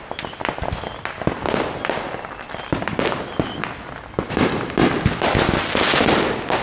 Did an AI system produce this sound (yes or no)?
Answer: no